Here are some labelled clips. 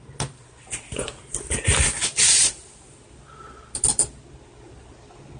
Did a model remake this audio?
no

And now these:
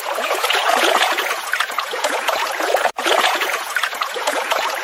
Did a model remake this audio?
yes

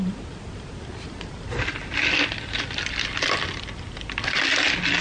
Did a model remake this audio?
no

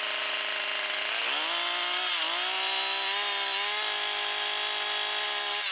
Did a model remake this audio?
no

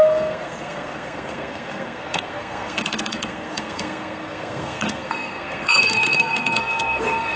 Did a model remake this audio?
yes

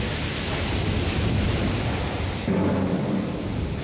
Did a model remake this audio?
no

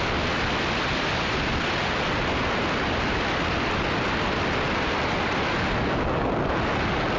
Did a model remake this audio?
no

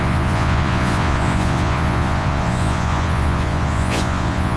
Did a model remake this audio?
yes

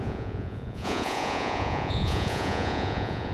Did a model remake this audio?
yes